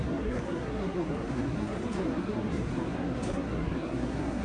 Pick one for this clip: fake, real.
fake